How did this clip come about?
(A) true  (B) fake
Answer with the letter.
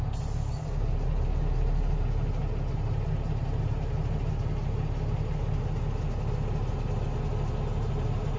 A